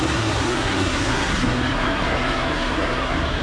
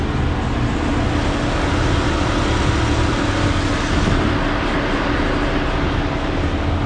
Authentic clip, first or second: second